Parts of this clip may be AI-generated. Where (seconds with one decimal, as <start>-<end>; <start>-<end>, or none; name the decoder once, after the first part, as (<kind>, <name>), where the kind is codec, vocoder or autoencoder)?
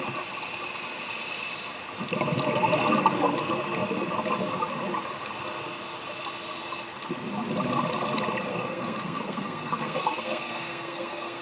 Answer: 8.5-11.4 (codec, SNAC)